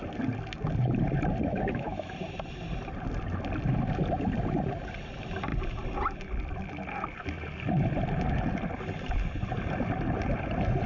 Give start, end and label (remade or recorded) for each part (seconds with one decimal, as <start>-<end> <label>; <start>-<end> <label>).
0.0-1.5 recorded; 1.5-2.1 remade; 2.1-10.9 recorded